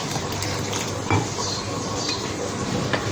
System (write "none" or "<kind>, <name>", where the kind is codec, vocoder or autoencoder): none